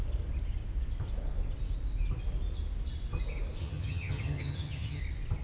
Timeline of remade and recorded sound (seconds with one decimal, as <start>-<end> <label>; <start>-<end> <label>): 0.0-3.6 recorded; 3.6-5.0 remade; 5.0-5.4 recorded